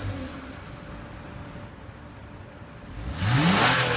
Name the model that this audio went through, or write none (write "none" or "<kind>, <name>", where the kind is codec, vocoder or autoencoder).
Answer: none